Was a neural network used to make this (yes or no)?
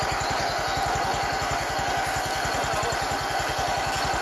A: no